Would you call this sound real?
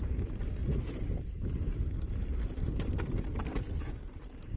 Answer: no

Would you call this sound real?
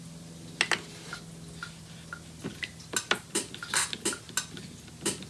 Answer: yes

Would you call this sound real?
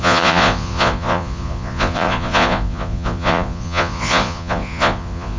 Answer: no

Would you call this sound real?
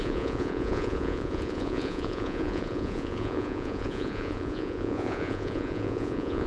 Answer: no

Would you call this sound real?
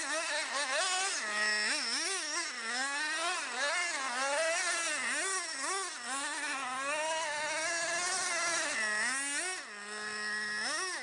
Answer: yes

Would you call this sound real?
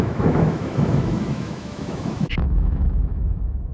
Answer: no